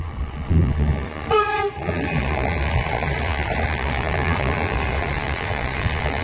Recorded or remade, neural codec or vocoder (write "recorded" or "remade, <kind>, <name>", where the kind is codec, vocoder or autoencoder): remade, vocoder, Vocos